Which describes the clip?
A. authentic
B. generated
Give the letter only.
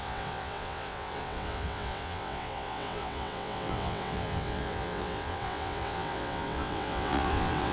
B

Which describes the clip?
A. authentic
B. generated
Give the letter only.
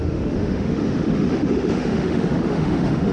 B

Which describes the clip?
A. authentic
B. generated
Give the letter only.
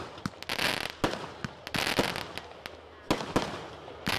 A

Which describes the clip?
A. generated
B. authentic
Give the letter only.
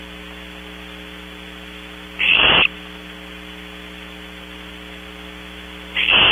B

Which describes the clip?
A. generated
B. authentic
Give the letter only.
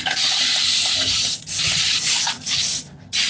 B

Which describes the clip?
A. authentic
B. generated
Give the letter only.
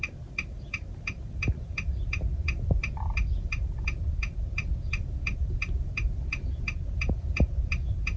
B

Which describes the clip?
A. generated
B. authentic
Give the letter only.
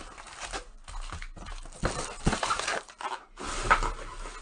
B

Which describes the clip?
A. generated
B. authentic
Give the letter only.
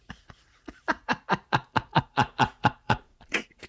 A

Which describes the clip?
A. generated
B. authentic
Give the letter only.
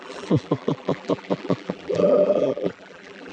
A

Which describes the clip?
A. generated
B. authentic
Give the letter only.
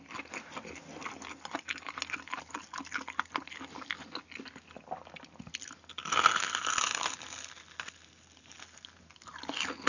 B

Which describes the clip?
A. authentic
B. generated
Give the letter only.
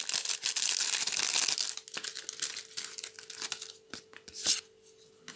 A